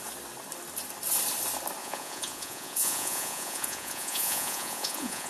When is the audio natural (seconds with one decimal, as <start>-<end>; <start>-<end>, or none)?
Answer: 0.0-1.8